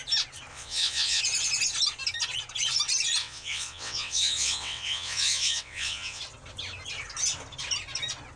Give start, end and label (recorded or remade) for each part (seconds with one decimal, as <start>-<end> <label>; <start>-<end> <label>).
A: 0.0-0.5 recorded; 0.5-1.2 remade; 1.2-3.2 recorded; 3.2-6.2 remade; 6.2-8.4 recorded